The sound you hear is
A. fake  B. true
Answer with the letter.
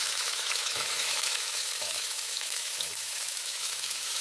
A